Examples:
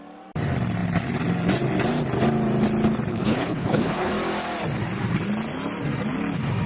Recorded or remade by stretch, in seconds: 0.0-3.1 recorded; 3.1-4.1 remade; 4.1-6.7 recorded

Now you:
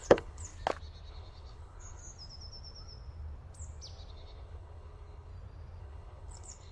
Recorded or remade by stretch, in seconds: 0.0-0.5 remade; 0.5-1.1 recorded; 1.1-2.0 remade; 2.0-4.1 recorded; 4.1-5.3 remade; 5.3-5.8 recorded; 5.8-6.7 remade

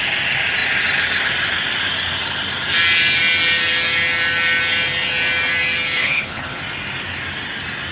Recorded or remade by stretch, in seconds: 0.0-6.0 recorded; 6.0-6.6 remade; 6.6-7.9 recorded

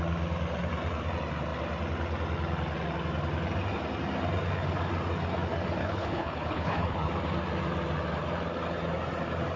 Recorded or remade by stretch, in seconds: 0.0-5.8 recorded; 5.8-7.1 remade; 7.1-9.6 recorded

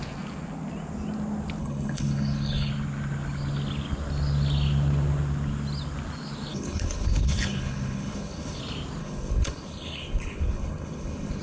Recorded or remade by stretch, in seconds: 0.0-1.6 recorded; 1.6-2.7 remade; 2.7-6.5 recorded; 6.5-8.6 remade; 8.6-9.0 recorded; 9.0-11.4 remade

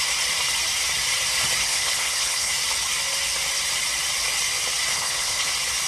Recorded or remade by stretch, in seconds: 0.0-1.6 recorded; 1.6-2.5 remade; 2.5-4.9 recorded; 4.9-5.5 remade; 5.5-5.9 recorded

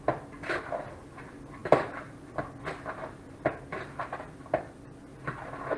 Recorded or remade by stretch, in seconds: 0.0-5.8 recorded